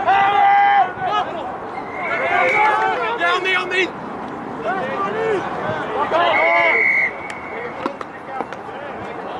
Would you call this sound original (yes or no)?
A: yes